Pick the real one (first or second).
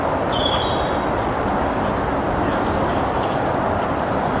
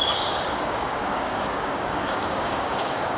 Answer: first